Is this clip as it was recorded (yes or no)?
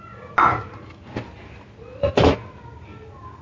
yes